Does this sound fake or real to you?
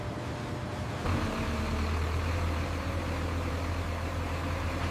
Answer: fake